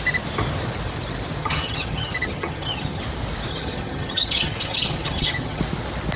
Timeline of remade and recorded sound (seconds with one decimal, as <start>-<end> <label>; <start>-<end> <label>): 0.0-1.4 recorded; 1.4-3.0 remade; 3.0-3.5 recorded; 3.5-5.6 remade; 5.6-6.2 recorded